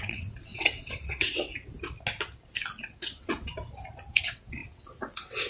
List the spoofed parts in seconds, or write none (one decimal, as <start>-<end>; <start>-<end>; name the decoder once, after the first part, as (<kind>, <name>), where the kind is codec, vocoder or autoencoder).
0.0-1.5 (vocoder, WaveNeXt); 2.8-3.5; 4.1-5.5